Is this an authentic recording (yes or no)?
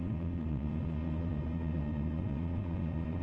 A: no